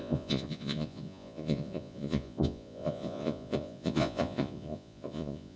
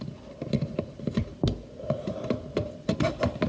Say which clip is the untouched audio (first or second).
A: second